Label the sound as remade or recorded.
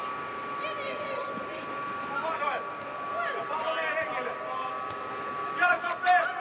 recorded